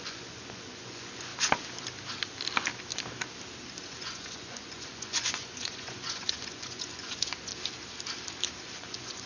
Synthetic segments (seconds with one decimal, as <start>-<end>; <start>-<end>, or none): 0.0-1.3; 3.8-7.5; 8.6-9.3